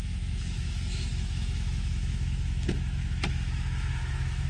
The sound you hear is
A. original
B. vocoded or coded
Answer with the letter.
B